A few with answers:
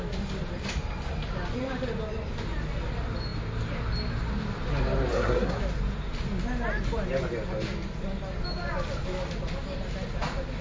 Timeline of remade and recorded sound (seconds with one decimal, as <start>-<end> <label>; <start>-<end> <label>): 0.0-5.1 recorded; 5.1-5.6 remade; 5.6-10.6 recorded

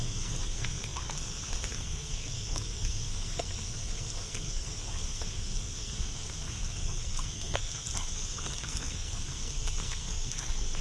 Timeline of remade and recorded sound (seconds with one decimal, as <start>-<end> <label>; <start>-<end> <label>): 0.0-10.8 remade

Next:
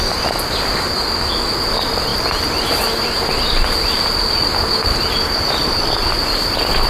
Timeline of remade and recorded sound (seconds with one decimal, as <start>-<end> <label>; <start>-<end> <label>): 0.0-6.9 recorded

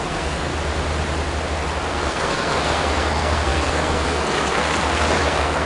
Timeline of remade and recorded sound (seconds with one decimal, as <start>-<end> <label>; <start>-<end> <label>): 0.0-0.5 remade; 0.5-1.9 recorded; 1.9-5.7 remade

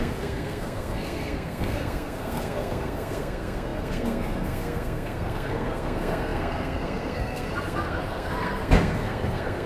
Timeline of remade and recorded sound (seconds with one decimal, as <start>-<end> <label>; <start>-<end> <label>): 0.0-9.7 remade

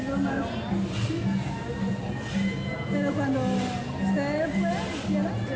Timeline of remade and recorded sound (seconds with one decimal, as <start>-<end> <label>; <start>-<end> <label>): 0.0-5.6 recorded

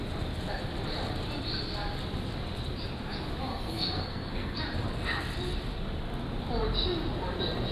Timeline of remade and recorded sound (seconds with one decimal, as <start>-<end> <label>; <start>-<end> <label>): 0.0-3.5 recorded; 3.5-4.6 remade; 4.6-7.7 recorded